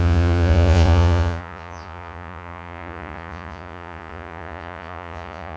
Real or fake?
fake